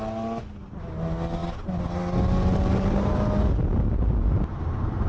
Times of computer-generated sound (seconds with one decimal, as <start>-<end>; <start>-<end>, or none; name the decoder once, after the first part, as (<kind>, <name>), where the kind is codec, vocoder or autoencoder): none